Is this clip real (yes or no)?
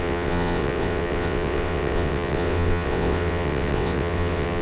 no